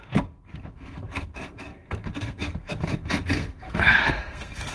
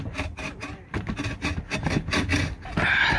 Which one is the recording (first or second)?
second